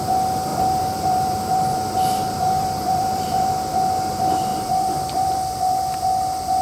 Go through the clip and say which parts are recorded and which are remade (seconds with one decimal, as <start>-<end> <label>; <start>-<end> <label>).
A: 0.0-0.5 recorded; 0.5-3.5 remade; 3.5-4.5 recorded; 4.5-6.0 remade; 6.0-6.6 recorded